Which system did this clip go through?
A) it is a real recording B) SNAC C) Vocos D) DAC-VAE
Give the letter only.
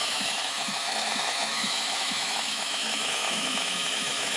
D